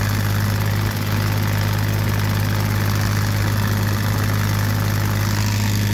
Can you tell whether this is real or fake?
real